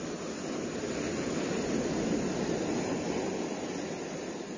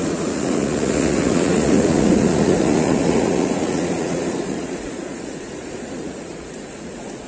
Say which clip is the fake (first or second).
second